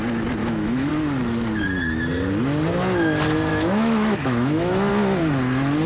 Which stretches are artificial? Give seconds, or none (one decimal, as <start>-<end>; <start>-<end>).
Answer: 0.4-0.9; 3.5-4.9